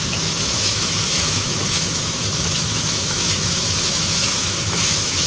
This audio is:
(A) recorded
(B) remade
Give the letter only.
B